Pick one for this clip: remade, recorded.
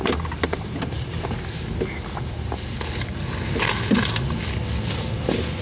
recorded